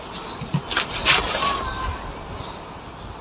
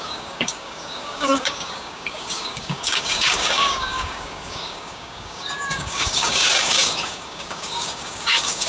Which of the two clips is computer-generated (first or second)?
second